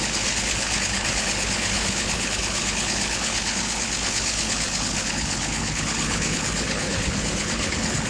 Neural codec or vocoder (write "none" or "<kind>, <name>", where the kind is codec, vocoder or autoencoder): codec, HILCodec